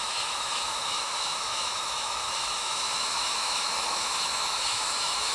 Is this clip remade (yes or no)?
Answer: yes